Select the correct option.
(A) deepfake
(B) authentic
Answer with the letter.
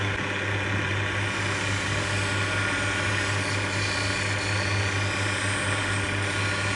B